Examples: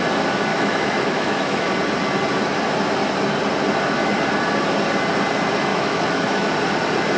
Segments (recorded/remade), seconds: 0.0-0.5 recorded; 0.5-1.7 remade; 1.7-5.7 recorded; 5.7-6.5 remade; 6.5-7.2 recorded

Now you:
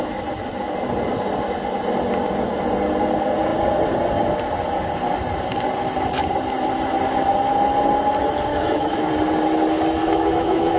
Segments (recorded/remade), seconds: 0.0-8.5 recorded; 8.5-9.1 remade; 9.1-10.0 recorded; 10.0-10.8 remade

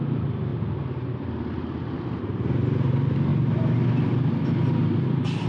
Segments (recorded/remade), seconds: 0.0-5.5 recorded

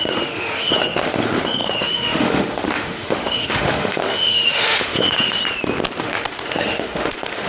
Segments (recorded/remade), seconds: 0.0-5.4 remade; 5.4-6.0 recorded; 6.0-7.5 remade

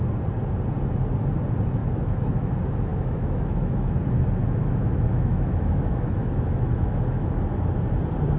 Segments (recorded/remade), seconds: 0.0-1.8 recorded; 1.8-2.5 remade; 2.5-2.9 recorded; 2.9-3.9 remade; 3.9-4.4 recorded; 4.4-7.3 remade; 7.3-8.4 recorded

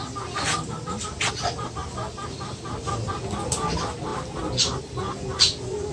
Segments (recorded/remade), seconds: 0.0-5.9 recorded

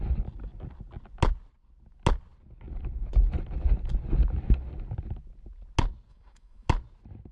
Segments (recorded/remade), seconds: 0.0-6.1 recorded; 6.1-6.7 remade; 6.7-7.3 recorded